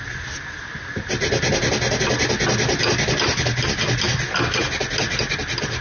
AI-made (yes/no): no